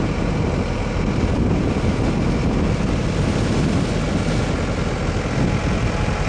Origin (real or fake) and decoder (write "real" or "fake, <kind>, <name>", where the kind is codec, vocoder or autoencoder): real